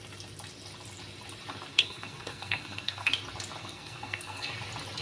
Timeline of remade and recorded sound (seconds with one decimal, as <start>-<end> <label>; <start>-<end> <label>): 0.0-1.7 recorded; 1.7-3.1 remade; 3.1-3.6 recorded; 3.6-4.6 remade; 4.6-5.0 recorded